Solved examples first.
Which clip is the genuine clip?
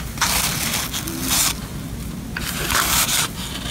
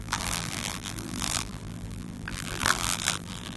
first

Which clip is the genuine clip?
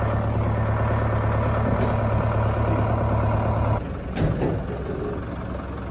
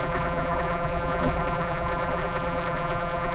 first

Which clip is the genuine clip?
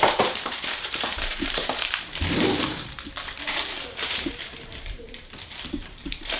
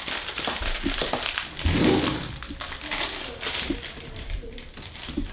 second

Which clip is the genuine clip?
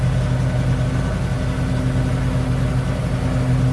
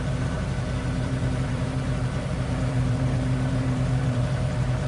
first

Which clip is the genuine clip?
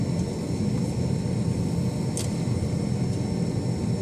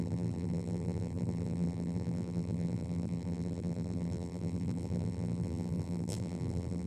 first